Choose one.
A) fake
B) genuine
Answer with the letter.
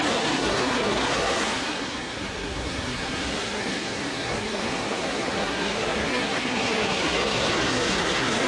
A